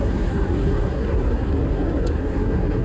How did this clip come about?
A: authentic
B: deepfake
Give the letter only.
B